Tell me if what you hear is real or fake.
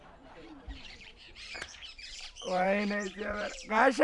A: fake